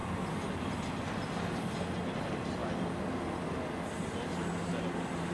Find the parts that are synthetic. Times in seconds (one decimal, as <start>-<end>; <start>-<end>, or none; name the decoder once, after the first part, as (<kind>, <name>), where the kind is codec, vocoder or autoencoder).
none